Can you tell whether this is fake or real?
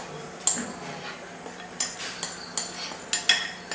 real